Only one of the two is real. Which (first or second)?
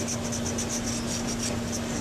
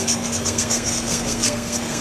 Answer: first